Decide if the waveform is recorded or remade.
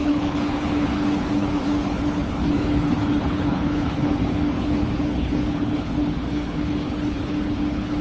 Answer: remade